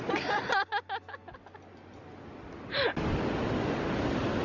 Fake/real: real